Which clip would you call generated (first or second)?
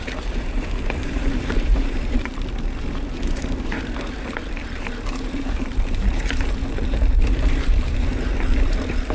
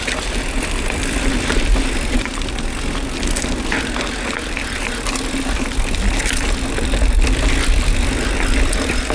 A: first